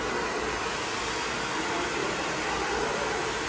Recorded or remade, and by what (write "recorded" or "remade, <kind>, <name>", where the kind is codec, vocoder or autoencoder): recorded